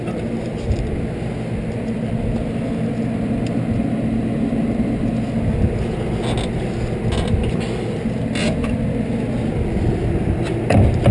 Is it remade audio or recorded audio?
recorded